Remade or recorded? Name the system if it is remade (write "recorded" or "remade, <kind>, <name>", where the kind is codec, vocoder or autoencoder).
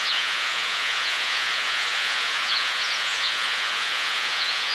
remade, vocoder, Vocos